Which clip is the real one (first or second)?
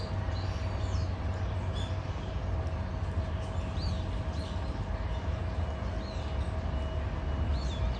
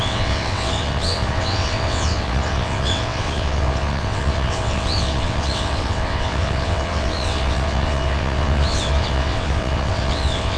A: first